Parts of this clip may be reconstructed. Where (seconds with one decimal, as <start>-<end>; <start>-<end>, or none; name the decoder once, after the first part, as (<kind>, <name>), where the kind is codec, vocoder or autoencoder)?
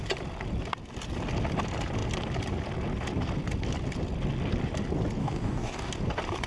5.2-5.9 (codec, DAC)